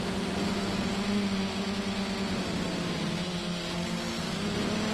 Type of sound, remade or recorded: recorded